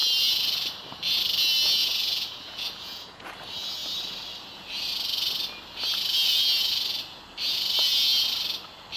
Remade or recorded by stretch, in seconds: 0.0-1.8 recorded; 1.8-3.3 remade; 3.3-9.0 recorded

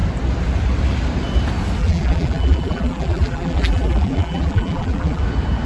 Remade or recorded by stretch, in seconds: 0.0-1.8 recorded; 1.8-5.2 remade; 5.2-5.7 recorded

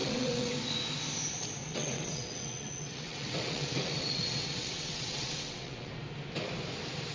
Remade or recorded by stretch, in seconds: 0.0-0.5 remade; 0.5-1.6 recorded; 1.6-5.9 remade; 5.9-7.1 recorded

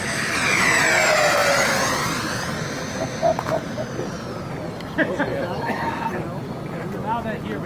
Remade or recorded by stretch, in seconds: 0.0-5.3 recorded; 5.3-6.0 remade; 6.0-7.7 recorded

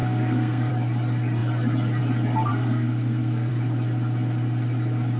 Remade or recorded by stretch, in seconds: 0.0-0.7 remade; 0.7-2.5 recorded; 2.5-3.5 remade; 3.5-5.2 recorded

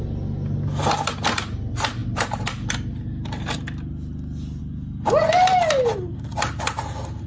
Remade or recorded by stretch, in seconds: 0.0-7.3 recorded